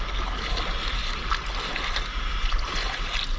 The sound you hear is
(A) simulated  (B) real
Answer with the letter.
B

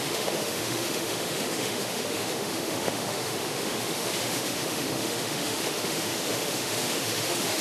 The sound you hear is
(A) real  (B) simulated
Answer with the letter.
B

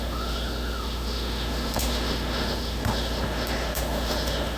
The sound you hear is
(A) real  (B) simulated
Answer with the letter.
B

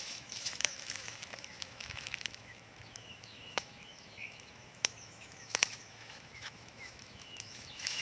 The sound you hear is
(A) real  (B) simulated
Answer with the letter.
B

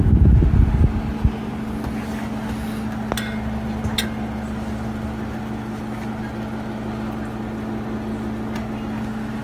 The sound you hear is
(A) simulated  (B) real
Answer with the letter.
B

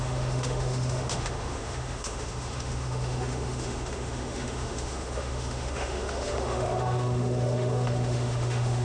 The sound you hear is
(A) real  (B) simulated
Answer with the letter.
B